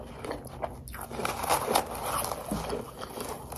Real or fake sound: real